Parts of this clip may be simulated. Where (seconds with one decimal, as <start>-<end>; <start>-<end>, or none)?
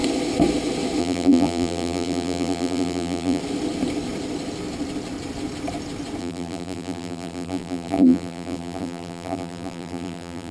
1.0-3.4; 6.2-10.5